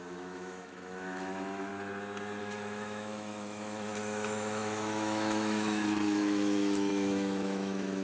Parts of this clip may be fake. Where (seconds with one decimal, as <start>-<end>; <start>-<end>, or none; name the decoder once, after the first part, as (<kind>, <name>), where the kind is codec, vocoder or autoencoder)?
0.0-1.7 (autoencoder, DAC-VAE); 2.4-8.0